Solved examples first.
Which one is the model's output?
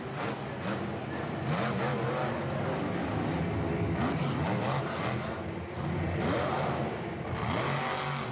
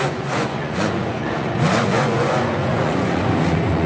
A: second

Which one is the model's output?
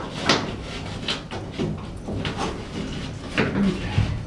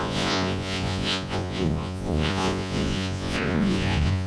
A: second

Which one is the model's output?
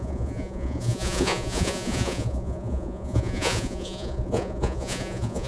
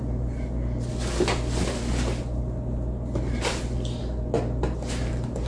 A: first